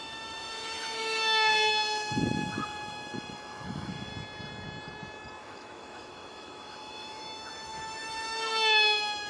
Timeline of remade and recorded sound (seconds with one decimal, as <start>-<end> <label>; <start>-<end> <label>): 0.0-4.1 remade; 4.1-5.4 recorded; 5.4-9.3 remade